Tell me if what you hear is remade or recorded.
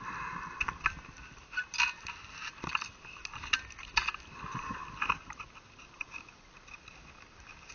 recorded